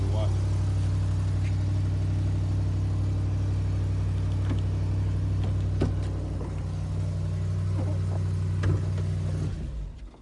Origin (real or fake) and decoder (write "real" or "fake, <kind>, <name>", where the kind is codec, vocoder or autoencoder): real